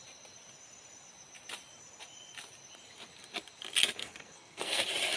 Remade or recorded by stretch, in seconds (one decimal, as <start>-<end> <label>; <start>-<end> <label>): 0.0-4.0 recorded; 4.0-4.8 remade; 4.8-5.2 recorded